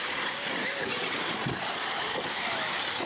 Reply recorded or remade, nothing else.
recorded